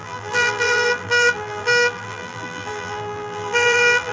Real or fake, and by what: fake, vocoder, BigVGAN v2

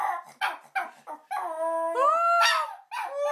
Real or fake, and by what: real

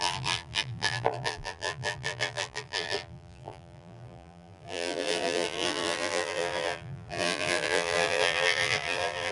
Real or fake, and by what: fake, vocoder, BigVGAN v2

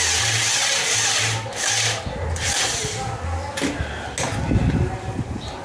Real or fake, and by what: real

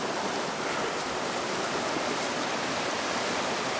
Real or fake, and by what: real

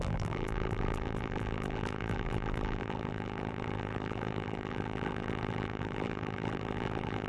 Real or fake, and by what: fake, vocoder, BigVGAN v2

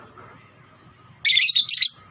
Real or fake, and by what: real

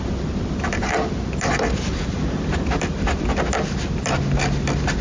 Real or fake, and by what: real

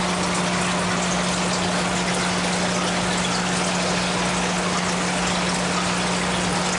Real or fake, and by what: real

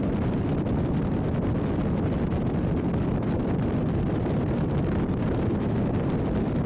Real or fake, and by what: fake, vocoder, BigVGAN v2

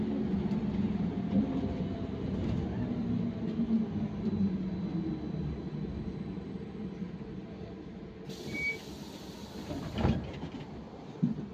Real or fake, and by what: real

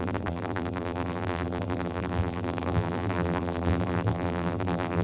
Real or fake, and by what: fake, vocoder, BigVGAN v2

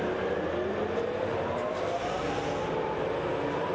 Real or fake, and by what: real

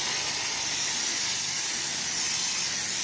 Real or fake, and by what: real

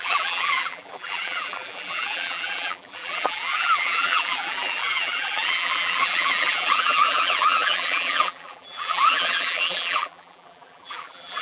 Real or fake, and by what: fake, vocoder, BigVGAN v2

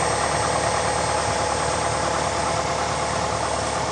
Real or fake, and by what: real